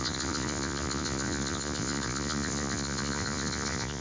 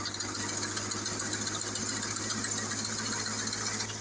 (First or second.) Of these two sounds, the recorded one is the second